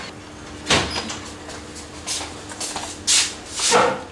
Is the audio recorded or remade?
recorded